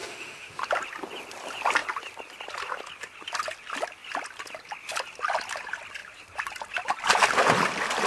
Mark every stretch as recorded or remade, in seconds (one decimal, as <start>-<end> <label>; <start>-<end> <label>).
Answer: 0.0-0.6 remade; 0.6-8.1 recorded